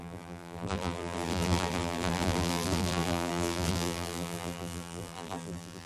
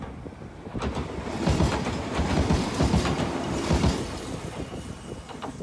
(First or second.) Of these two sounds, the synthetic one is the first